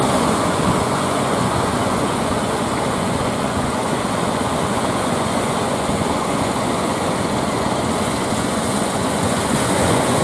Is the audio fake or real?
fake